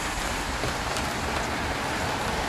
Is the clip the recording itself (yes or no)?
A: yes